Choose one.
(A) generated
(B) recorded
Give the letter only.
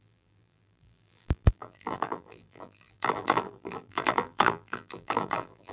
A